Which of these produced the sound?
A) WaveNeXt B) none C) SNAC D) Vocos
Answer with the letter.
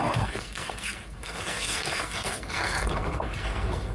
C